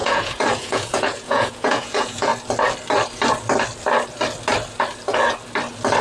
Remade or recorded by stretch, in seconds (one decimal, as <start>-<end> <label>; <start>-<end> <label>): 0.0-2.3 remade; 2.3-6.0 recorded